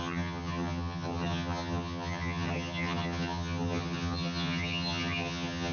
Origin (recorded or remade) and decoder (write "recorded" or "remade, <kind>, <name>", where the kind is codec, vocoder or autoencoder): remade, vocoder, HiFi-GAN